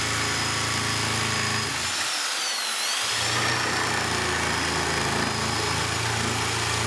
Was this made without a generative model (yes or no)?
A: yes